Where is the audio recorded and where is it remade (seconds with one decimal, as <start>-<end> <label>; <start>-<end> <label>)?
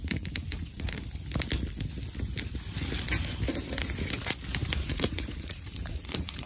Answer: 0.0-1.0 remade; 1.0-4.9 recorded; 4.9-6.5 remade